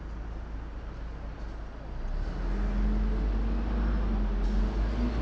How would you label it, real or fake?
real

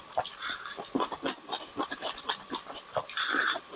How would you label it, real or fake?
real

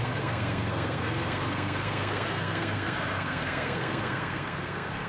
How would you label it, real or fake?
fake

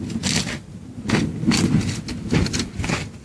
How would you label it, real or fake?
real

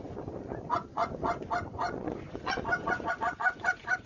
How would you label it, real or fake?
fake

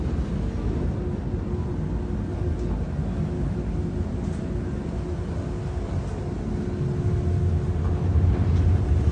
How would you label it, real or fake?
real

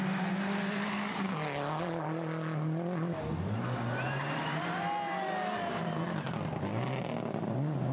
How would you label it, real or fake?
real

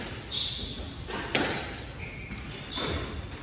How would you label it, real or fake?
real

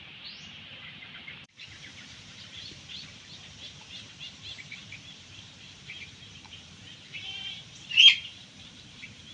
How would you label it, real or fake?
fake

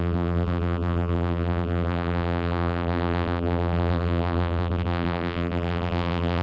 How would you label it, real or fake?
fake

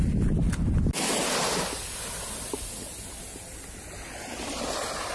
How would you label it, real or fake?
real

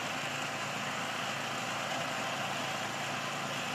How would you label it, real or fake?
real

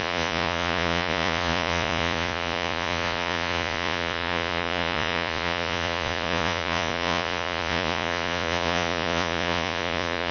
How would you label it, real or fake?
fake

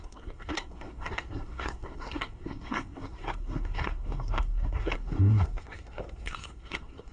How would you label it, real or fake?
fake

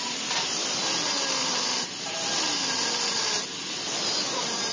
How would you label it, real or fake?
real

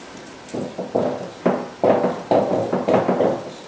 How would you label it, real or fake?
real